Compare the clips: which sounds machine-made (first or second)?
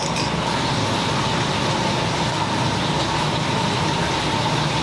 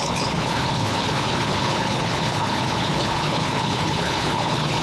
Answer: second